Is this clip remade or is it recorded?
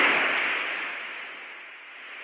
recorded